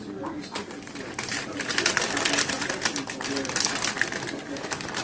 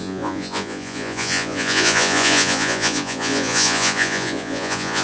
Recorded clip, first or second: first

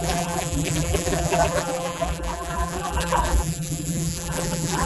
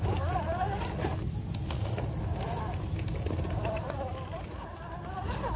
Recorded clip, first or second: second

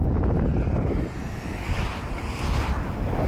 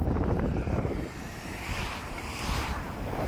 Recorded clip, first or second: first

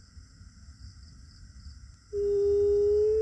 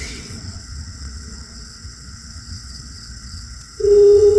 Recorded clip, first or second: first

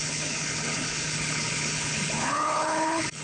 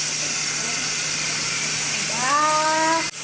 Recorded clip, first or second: second